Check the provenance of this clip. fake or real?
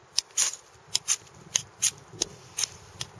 fake